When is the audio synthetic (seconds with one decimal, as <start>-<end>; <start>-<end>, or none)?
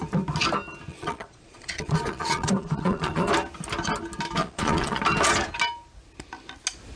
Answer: 0.9-3.3; 4.4-5.0